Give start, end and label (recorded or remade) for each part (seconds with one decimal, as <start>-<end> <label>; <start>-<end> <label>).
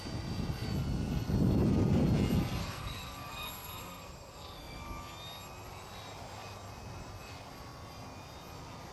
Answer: 0.0-2.6 recorded; 2.6-4.8 remade; 4.8-8.9 recorded